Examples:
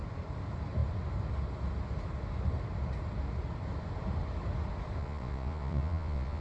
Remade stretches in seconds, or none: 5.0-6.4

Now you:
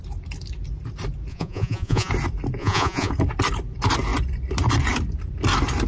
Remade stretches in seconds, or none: 1.3-2.1; 2.6-3.1

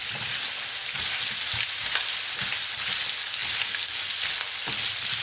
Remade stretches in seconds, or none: none

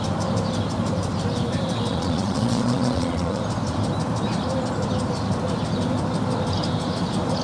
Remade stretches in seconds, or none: 1.9-3.4

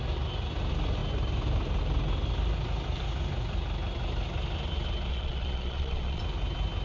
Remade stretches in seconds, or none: 5.1-6.2

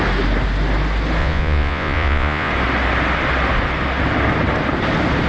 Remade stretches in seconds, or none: 1.2-2.5